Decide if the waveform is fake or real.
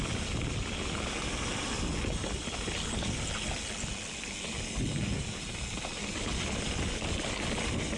real